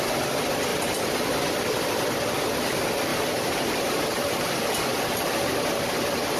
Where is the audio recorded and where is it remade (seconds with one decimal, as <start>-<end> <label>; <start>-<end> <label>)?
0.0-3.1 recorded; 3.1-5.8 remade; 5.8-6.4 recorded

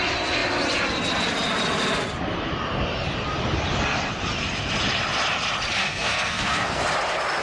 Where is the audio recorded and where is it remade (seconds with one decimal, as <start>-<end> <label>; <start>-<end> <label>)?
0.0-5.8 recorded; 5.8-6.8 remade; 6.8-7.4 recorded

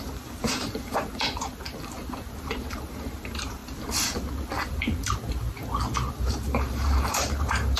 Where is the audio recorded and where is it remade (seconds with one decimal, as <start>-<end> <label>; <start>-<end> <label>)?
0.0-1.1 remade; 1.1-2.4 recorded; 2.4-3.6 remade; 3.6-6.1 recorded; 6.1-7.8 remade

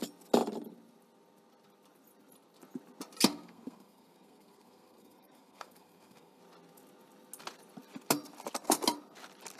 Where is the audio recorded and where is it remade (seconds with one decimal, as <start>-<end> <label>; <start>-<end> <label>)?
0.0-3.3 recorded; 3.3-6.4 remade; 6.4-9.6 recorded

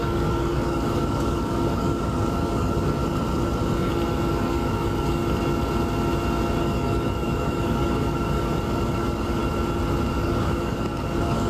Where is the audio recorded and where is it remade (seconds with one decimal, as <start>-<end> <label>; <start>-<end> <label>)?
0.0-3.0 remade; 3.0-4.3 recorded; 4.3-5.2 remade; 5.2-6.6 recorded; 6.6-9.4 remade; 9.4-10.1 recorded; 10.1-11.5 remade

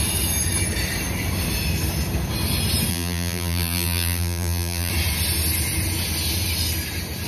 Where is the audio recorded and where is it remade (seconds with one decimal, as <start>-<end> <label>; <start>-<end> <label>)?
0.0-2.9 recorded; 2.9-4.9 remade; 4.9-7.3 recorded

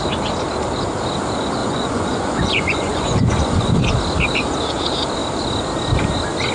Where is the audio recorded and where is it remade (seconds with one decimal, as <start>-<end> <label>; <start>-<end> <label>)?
0.0-1.6 recorded; 1.6-3.7 remade; 3.7-6.5 recorded